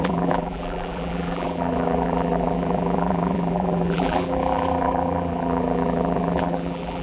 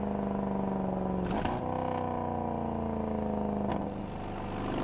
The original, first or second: second